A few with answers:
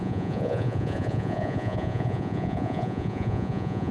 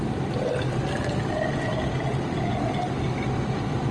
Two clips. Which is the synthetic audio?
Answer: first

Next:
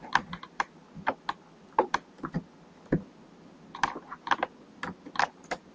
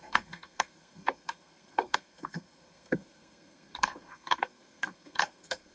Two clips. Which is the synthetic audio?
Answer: second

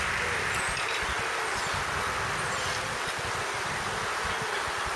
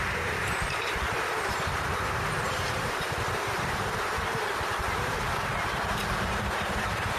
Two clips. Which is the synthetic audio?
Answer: second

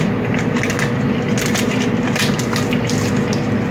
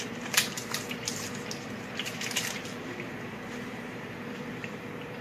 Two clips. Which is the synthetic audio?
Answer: second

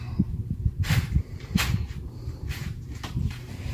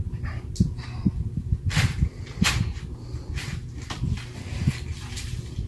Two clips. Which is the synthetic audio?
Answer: first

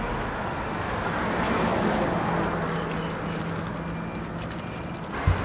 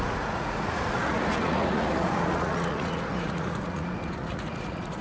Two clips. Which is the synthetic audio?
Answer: second